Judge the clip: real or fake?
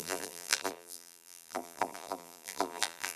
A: fake